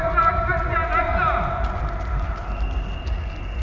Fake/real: real